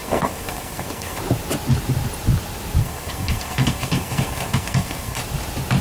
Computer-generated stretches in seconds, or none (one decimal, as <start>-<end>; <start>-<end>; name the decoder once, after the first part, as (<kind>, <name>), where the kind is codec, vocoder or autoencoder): 0.0-1.2 (codec, SNAC); 2.8-5.2

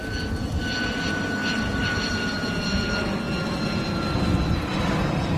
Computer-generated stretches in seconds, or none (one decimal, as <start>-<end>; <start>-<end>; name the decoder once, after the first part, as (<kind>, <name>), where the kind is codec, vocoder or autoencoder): 1.4-2.9 (vocoder, BigVGAN v2)

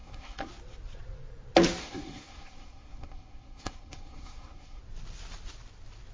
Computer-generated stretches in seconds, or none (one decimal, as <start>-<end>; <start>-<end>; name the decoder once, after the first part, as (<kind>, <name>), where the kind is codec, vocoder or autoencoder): 0.0-0.5 (codec, SNAC); 1.8-4.8

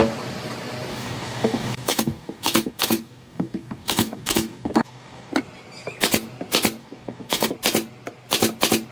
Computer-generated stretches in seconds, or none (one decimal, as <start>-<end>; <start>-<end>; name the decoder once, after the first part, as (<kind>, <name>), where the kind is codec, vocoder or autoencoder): 0.9-5.3 (codec, DAC); 6.8-7.5

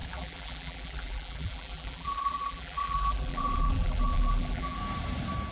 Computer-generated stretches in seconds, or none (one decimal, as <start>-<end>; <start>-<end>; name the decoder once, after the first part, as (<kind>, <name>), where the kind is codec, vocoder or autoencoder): 0.0-4.8 (vocoder, BigVGAN v2)

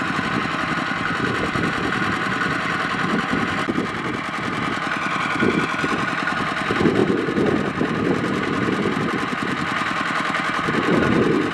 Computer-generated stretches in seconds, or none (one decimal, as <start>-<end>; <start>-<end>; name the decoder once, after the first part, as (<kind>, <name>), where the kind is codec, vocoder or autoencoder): none

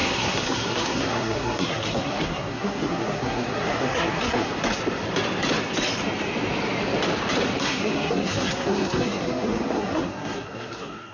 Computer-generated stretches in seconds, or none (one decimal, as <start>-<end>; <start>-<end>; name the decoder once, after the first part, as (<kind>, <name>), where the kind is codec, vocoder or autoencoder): 0.0-4.5 (codec, SNAC); 7.6-11.1